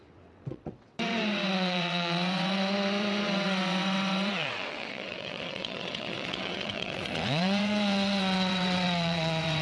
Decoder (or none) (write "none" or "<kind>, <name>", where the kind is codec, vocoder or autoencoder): vocoder, WaveNeXt